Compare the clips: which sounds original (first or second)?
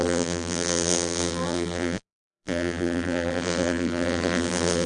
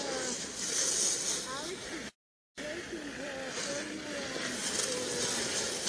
second